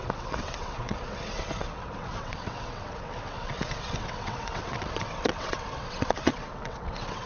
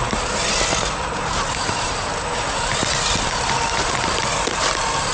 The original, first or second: second